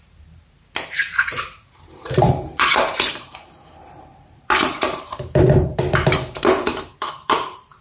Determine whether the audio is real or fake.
fake